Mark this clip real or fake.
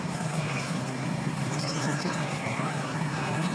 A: fake